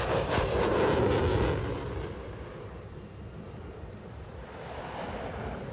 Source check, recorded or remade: remade